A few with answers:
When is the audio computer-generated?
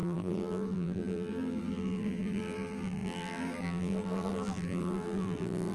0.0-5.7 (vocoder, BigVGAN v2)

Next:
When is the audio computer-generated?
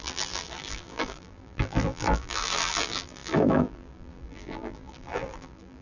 0.0-5.8 (vocoder, BigVGAN v2)